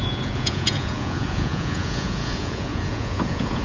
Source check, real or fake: fake